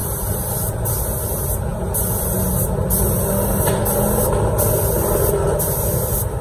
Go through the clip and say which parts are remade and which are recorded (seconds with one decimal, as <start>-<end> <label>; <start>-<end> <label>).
0.0-0.9 remade; 0.9-6.4 recorded